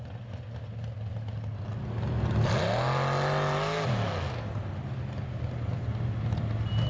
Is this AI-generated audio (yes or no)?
no